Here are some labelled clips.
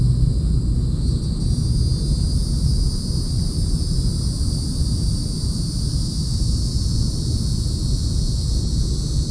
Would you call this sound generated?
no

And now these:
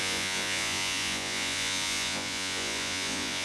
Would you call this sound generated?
yes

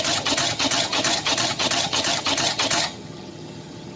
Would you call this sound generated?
yes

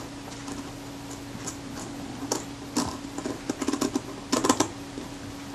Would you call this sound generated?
no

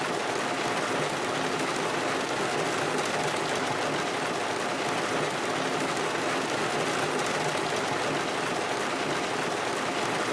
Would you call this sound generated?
no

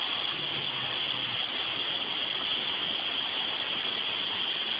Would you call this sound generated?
no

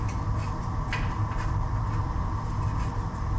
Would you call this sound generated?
no